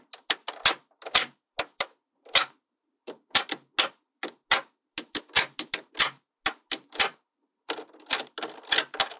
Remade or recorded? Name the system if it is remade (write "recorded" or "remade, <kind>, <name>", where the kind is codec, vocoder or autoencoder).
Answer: recorded